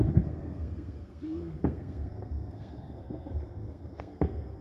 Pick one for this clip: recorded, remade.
remade